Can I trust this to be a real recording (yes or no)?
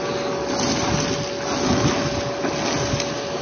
yes